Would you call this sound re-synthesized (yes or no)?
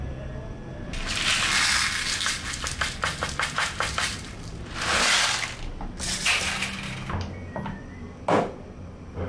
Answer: no